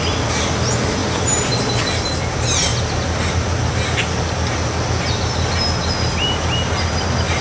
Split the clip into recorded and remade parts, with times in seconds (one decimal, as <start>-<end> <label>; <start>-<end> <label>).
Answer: 0.0-7.4 recorded